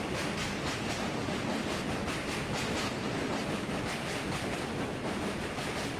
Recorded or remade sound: recorded